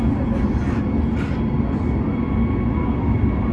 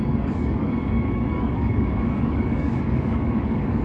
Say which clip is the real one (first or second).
first